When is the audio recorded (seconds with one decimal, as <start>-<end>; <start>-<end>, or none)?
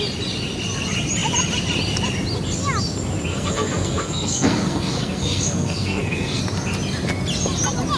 0.0-3.3; 6.4-8.0